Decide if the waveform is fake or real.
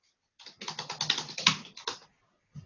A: real